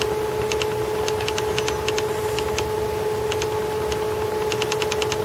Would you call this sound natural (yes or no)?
yes